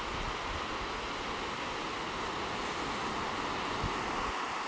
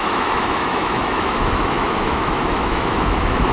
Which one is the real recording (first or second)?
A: first